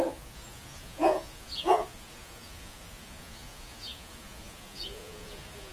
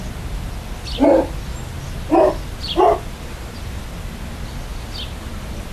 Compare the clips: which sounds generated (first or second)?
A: first